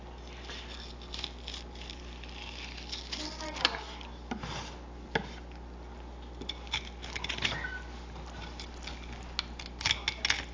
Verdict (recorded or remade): recorded